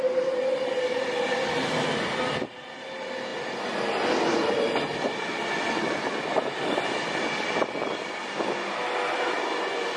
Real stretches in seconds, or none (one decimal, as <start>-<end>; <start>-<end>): 0.0-10.0